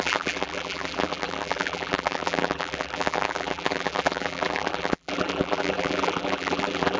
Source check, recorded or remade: remade